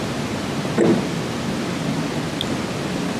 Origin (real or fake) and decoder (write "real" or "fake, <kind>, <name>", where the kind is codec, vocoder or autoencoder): real